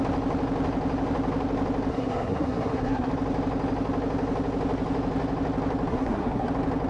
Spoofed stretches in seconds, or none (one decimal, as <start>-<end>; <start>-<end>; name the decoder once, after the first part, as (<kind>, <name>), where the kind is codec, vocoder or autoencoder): 1.9-3.1 (codec, SNAC); 5.9-6.5